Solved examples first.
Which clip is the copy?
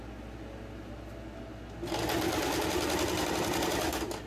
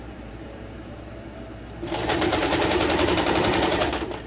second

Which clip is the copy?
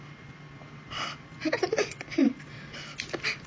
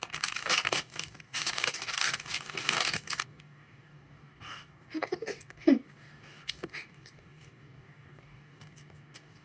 second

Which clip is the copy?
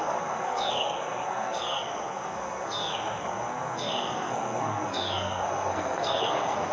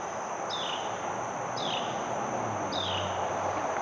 first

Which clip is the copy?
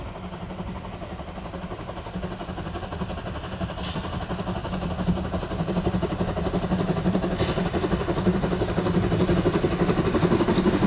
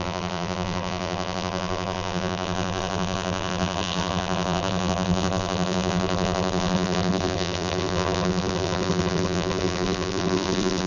second